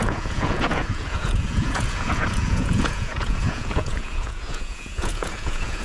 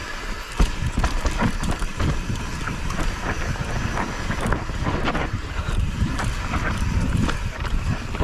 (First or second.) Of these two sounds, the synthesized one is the first